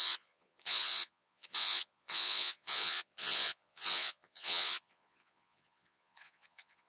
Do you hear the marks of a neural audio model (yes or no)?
yes